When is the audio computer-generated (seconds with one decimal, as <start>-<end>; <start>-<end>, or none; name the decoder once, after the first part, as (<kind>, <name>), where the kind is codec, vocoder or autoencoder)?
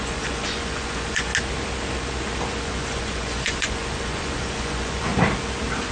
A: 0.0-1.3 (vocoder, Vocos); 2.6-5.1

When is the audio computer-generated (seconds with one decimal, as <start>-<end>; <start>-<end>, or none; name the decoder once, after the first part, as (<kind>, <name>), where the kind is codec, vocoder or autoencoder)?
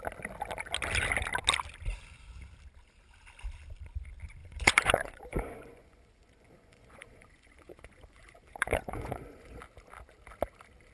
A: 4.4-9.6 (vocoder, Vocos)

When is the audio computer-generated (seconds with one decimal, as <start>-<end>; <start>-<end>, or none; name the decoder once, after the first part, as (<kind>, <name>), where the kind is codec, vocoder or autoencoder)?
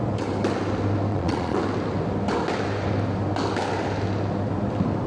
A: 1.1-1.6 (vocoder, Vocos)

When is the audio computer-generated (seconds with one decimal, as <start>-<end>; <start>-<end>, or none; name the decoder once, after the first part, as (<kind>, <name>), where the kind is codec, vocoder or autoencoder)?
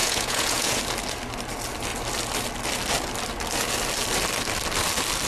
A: 0.0-0.8 (vocoder, Vocos)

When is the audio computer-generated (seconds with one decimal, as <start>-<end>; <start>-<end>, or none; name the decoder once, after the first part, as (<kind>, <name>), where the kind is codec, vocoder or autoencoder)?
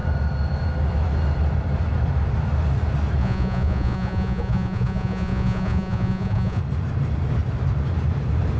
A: 3.2-6.6 (vocoder, Vocos)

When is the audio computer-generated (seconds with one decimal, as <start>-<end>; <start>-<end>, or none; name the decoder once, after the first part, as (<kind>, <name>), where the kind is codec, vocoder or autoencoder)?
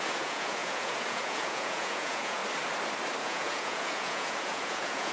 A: 0.0-2.4 (vocoder, Vocos); 3.2-5.1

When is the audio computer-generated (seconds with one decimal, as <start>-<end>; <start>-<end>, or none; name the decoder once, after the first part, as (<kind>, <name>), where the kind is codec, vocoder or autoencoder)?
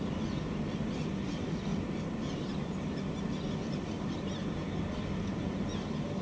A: none